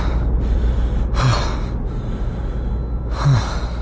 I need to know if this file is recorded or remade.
recorded